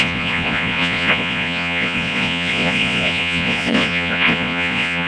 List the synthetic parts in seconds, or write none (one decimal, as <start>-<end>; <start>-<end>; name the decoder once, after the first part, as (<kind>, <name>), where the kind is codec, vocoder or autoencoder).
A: 0.0-5.1 (vocoder, Vocos)